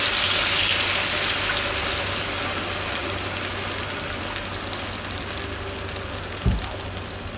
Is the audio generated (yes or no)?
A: no